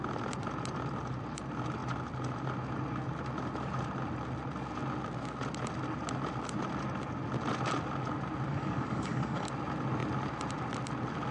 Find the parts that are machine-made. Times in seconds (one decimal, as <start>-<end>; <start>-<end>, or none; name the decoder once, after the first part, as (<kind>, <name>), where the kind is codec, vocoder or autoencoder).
8.5-9.5 (codec, DAC)